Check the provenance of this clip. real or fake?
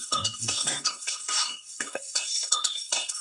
fake